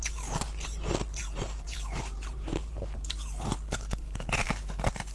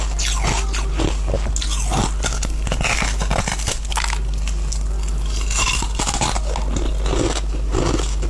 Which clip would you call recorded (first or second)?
second